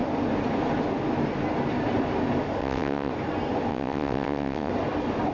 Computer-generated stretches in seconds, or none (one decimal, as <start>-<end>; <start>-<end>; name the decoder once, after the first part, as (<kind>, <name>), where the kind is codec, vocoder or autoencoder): 2.6-3.1 (vocoder, WaveNeXt); 3.7-4.7